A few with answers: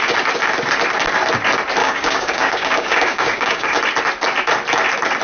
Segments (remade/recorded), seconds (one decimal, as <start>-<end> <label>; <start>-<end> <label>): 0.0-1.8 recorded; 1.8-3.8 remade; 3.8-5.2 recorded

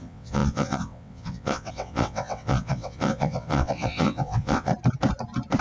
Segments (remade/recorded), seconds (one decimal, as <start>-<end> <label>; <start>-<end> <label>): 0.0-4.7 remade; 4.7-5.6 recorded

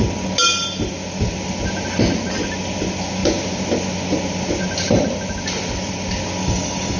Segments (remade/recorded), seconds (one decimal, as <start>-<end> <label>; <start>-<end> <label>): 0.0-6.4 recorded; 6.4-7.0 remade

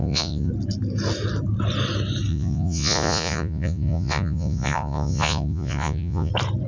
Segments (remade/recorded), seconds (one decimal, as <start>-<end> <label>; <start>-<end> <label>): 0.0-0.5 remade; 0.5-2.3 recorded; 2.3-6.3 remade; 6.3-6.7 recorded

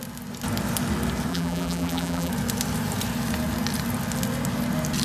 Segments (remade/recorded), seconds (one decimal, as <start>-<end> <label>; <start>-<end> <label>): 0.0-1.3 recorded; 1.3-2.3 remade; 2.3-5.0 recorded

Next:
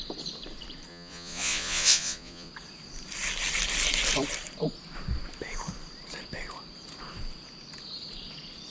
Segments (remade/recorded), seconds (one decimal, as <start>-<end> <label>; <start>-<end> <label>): 0.0-0.9 recorded; 0.9-2.5 remade; 2.5-8.7 recorded